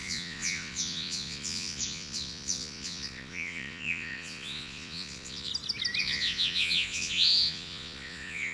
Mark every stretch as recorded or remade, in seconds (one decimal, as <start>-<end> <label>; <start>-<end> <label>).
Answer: 0.0-5.5 remade; 5.5-6.0 recorded; 6.0-8.5 remade